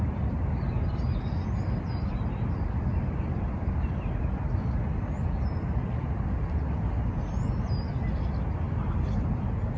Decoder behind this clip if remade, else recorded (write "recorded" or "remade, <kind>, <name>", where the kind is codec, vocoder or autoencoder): recorded